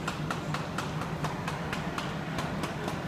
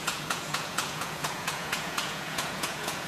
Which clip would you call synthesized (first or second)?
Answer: second